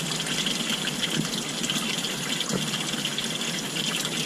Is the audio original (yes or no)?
yes